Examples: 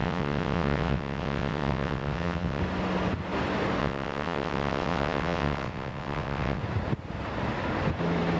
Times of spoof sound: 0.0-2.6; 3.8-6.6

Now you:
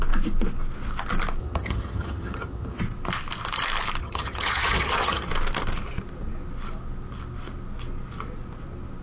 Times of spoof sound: 1.4-2.8; 4.0-5.3